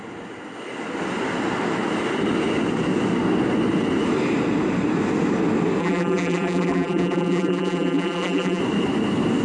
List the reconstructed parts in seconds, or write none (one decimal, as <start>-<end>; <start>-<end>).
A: 5.8-8.6